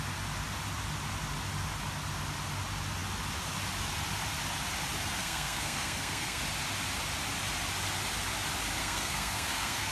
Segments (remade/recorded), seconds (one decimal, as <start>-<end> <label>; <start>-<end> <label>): 0.0-5.2 recorded; 5.2-6.4 remade; 6.4-8.8 recorded; 8.8-9.9 remade